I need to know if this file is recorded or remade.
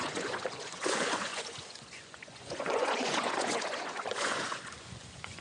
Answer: remade